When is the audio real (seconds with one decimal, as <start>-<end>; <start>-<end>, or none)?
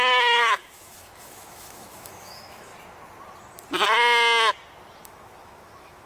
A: 2.7-5.0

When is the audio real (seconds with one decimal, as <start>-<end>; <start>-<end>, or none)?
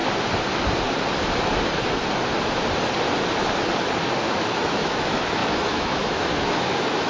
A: 0.0-4.3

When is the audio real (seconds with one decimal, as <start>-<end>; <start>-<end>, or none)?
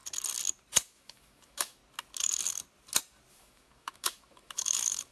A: 0.0-0.8; 1.8-3.3